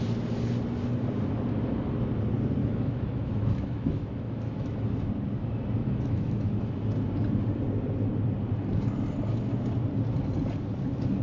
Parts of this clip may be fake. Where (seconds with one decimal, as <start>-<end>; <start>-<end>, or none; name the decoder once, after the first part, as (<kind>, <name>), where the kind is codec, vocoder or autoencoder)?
2.6-5.1 (autoencoder, DAC-VAE); 5.8-6.7